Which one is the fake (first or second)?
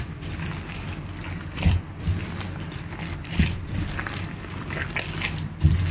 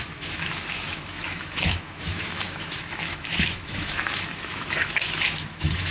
second